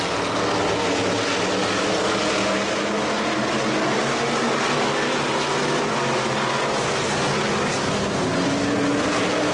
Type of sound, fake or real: real